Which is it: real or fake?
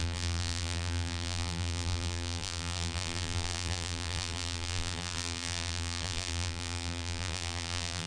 fake